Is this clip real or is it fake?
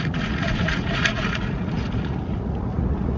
fake